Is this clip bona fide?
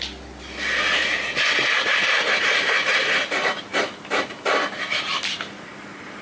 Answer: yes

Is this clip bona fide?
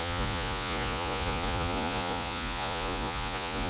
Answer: no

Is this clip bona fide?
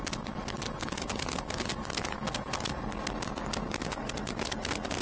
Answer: yes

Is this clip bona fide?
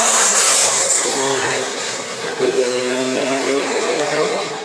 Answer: no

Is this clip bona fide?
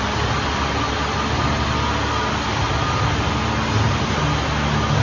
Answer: yes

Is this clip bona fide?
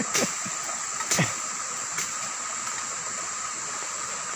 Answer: yes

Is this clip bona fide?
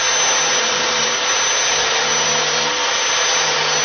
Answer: yes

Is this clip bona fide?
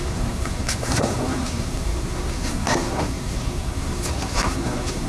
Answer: no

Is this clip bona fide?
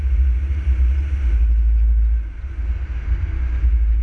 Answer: yes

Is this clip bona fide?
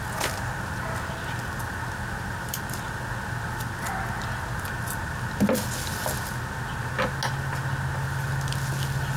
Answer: yes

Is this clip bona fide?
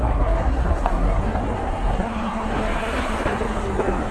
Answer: no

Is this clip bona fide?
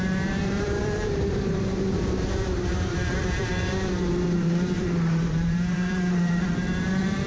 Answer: no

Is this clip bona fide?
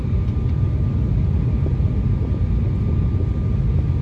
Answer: yes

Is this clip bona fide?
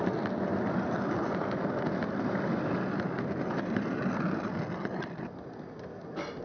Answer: yes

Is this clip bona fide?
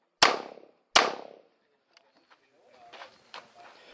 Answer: yes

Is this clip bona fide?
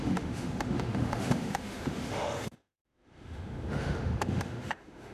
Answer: no